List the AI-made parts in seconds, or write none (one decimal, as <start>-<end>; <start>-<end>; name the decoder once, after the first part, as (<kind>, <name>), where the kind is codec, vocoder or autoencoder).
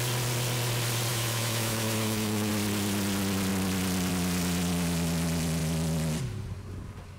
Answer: 1.1-2.5 (autoencoder, DAC-VAE)